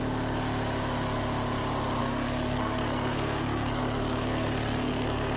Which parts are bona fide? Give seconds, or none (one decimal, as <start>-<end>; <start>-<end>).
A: 0.0-2.0